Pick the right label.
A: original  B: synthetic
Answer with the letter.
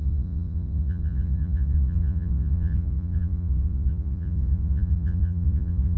B